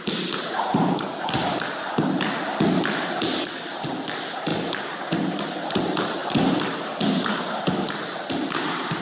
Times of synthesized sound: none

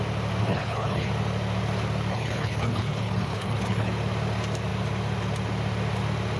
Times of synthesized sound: 0.4-1.1 (codec, HILCodec); 2.1-3.9